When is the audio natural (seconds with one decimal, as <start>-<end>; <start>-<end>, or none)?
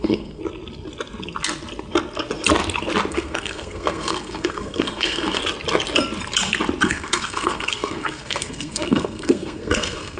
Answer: 0.4-3.1; 5.4-6.8